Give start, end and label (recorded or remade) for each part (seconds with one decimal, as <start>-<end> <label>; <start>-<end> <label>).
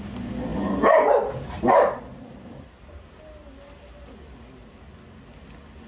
0.0-5.9 recorded